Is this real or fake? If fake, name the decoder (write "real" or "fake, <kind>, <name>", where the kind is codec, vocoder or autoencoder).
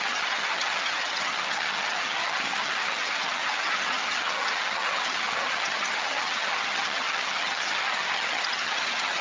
fake, vocoder, HiFi-GAN